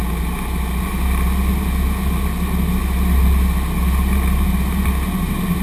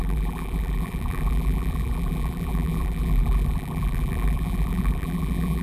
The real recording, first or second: first